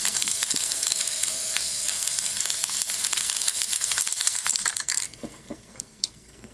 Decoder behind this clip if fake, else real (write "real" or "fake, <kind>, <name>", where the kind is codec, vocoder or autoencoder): fake, codec, SNAC